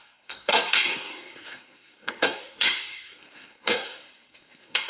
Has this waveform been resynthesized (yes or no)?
yes